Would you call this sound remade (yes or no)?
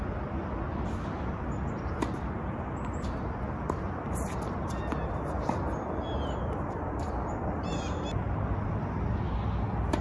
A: no